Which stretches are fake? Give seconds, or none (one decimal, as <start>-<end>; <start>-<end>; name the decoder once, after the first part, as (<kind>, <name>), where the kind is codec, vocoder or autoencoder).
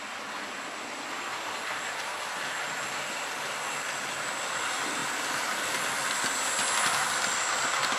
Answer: 1.3-3.3 (vocoder, BigVGAN v2)